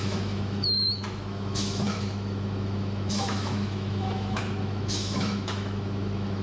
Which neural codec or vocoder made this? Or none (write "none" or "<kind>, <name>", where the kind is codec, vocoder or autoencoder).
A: autoencoder, DAC-VAE